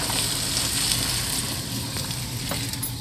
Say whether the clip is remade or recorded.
recorded